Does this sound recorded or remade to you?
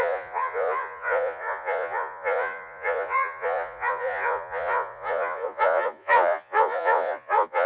remade